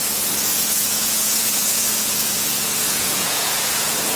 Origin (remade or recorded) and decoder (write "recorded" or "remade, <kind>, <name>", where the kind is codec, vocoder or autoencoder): remade, vocoder, Vocos